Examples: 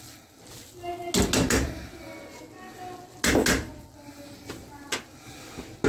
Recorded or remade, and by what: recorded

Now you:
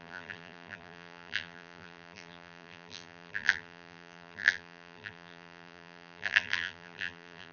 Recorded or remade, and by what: remade, vocoder, BigVGAN v2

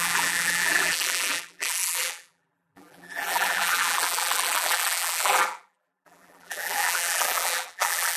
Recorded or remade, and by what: remade, vocoder, BigVGAN v2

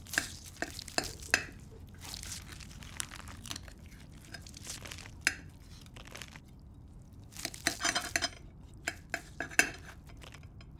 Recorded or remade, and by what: recorded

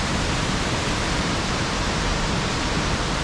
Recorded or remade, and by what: remade, vocoder, BigVGAN v2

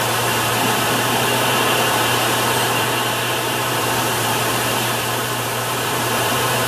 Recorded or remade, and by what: remade, vocoder, BigVGAN v2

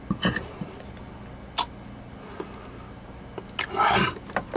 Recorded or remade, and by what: recorded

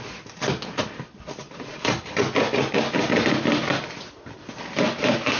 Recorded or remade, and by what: recorded